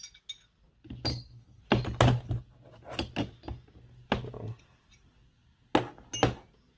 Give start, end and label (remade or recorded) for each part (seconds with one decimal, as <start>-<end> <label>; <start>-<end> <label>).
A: 0.0-1.1 recorded; 1.1-1.6 remade; 1.6-6.8 recorded